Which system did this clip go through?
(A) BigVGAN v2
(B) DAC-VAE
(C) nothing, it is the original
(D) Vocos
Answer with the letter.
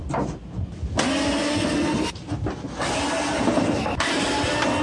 C